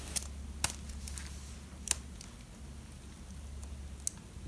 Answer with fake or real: real